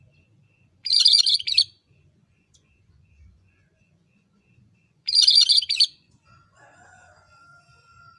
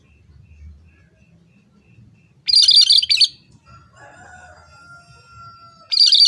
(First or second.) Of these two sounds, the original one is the second